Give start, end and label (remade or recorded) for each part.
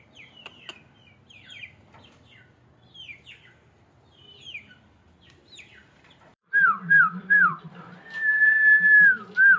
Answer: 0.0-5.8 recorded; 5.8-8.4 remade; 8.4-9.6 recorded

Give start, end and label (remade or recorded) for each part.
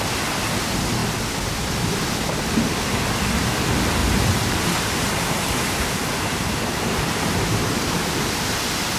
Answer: 0.0-4.0 recorded; 4.0-8.6 remade; 8.6-9.0 recorded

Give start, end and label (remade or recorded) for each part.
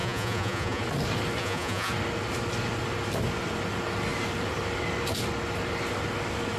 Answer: 0.0-0.8 remade; 0.8-1.4 recorded; 1.4-1.9 remade; 1.9-6.6 recorded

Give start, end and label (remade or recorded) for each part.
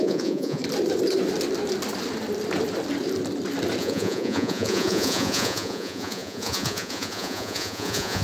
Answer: 0.0-0.6 remade; 0.6-3.8 recorded; 3.8-8.2 remade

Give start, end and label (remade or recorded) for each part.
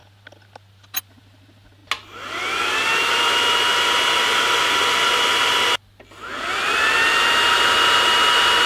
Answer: 0.0-8.7 recorded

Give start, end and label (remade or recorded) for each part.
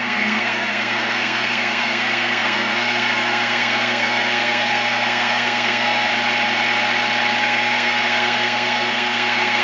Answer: 0.0-6.1 remade; 6.1-7.4 recorded; 7.4-9.6 remade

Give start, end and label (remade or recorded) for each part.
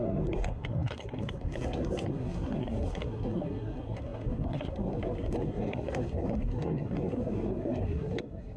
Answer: 0.0-8.6 remade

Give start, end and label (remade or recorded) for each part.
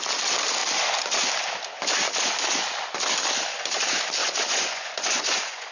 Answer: 0.0-4.2 recorded; 4.2-5.7 remade